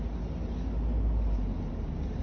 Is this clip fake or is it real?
real